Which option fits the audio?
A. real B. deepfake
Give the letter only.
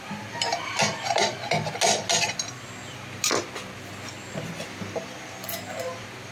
A